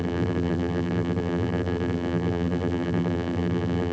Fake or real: fake